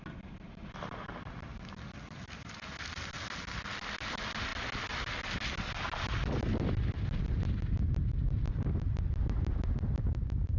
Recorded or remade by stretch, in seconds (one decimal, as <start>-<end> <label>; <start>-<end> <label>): 0.0-10.6 recorded